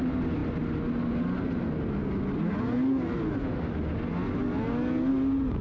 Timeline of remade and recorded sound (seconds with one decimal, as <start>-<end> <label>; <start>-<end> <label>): 0.0-5.6 recorded